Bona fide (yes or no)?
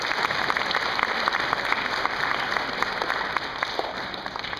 yes